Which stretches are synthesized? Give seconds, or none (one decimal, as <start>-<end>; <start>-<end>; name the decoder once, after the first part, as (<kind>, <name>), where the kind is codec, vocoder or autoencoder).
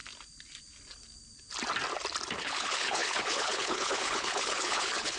2.4-5.2 (codec, HILCodec)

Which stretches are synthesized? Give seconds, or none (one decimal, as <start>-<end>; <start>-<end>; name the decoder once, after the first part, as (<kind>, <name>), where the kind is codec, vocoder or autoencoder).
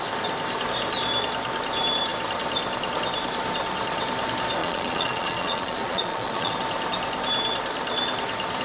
4.6-6.5 (vocoder, Vocos)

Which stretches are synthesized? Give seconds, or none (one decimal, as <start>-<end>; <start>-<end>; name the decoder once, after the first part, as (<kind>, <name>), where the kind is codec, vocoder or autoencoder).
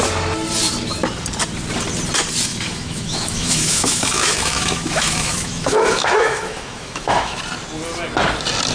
2.5-7.4 (autoencoder, DAC-VAE)